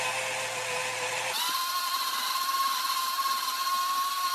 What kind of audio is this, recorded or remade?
recorded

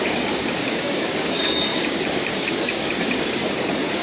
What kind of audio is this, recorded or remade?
remade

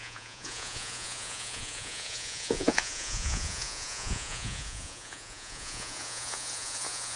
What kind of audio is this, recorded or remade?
remade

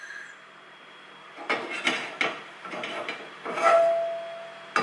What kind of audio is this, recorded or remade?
recorded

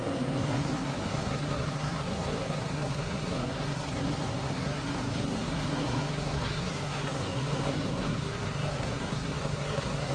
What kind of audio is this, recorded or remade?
remade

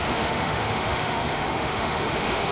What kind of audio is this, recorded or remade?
remade